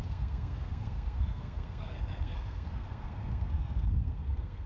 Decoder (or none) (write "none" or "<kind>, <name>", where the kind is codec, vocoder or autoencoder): codec, SNAC